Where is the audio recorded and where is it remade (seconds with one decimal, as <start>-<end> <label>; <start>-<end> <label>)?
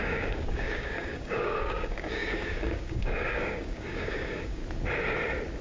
0.0-4.6 remade; 4.6-5.6 recorded